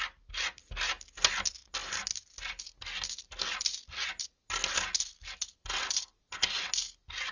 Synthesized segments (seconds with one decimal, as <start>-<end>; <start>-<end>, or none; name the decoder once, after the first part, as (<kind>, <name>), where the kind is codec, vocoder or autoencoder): none